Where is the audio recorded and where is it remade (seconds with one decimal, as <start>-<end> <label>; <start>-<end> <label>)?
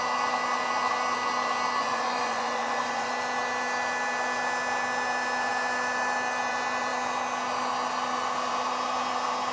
0.0-1.8 recorded; 1.8-3.1 remade; 3.1-9.5 recorded